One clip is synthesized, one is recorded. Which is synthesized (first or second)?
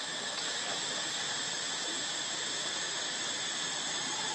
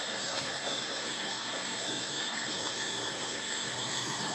second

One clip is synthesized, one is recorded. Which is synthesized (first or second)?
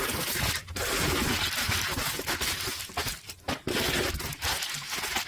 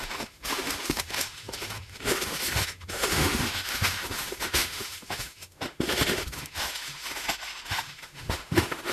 second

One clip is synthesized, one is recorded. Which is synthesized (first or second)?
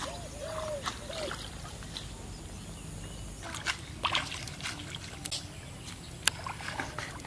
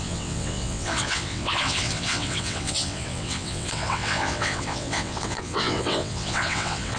second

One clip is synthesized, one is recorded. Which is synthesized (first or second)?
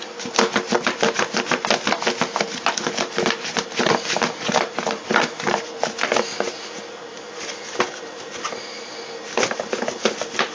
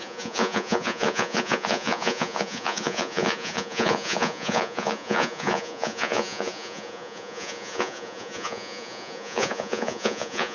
second